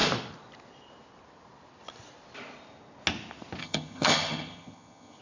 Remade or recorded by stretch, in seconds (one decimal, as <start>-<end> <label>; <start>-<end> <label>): 0.0-3.6 recorded; 3.6-5.2 remade